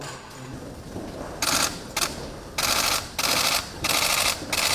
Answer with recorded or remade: recorded